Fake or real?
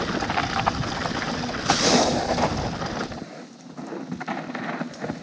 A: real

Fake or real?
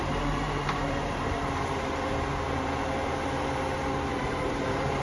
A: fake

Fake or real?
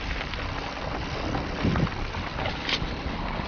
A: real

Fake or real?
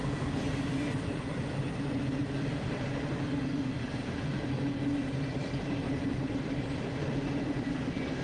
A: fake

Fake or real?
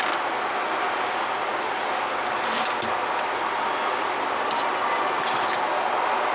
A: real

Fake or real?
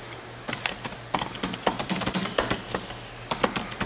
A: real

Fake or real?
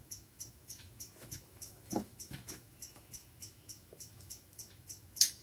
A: fake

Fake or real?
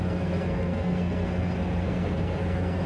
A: fake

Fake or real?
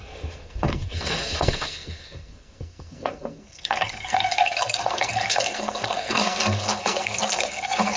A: fake